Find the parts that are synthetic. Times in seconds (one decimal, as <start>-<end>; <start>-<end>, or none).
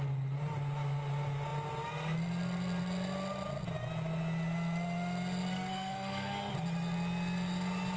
5.5-6.5